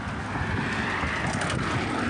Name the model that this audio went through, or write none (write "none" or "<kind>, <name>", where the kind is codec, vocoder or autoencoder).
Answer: none